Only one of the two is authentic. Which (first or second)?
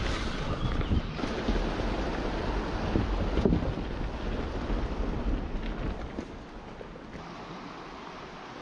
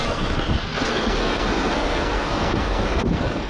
first